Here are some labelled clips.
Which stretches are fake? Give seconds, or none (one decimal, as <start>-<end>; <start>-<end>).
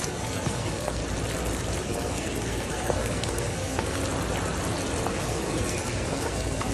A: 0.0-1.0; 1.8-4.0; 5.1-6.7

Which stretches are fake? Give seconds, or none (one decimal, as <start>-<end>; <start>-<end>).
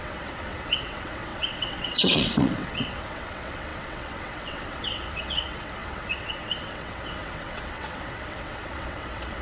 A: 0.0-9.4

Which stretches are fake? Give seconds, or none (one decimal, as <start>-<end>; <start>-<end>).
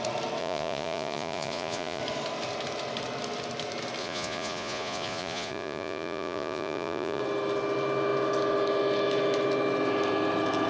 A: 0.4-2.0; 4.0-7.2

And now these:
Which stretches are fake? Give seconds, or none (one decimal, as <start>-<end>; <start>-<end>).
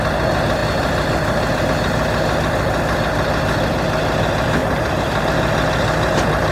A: 4.6-5.2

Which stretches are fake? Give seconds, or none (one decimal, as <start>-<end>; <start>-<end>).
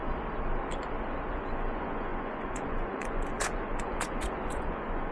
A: 1.3-5.1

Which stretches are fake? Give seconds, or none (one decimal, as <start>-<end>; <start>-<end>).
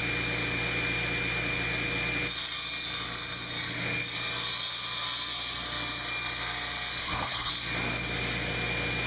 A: 7.0-7.5